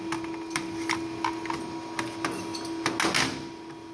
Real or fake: real